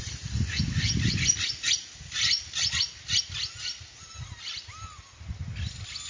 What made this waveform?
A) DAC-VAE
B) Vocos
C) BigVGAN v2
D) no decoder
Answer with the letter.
D